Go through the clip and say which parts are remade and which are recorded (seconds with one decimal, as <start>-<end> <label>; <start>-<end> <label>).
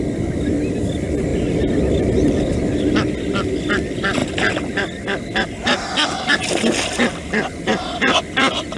0.0-8.8 recorded